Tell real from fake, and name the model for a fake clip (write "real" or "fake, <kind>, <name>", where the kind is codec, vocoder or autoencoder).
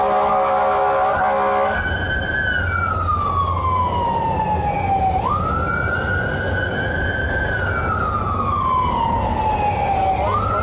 real